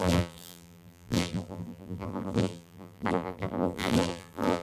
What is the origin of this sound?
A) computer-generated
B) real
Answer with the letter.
A